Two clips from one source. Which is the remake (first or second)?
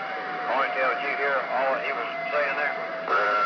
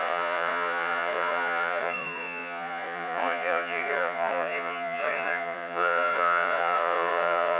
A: second